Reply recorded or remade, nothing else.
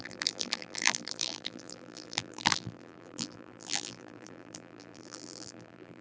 remade